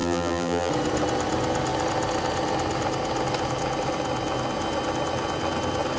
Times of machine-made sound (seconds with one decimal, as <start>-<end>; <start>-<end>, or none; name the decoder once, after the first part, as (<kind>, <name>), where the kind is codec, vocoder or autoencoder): 0.0-0.7 (vocoder, BigVGAN v2)